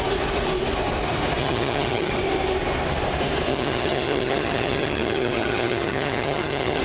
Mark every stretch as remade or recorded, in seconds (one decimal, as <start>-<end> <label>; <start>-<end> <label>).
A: 0.0-1.4 recorded; 1.4-2.1 remade; 2.1-3.5 recorded; 3.5-6.8 remade